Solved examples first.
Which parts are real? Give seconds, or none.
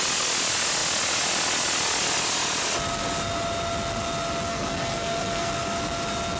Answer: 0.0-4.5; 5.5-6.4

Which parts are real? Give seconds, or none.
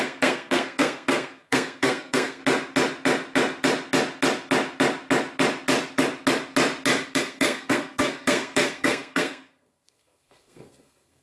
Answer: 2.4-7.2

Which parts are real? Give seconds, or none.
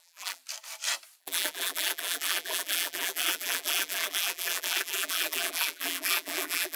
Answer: 0.4-1.2